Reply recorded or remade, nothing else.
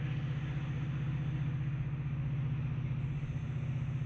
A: recorded